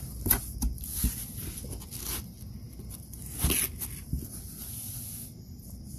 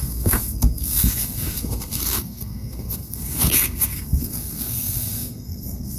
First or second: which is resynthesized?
second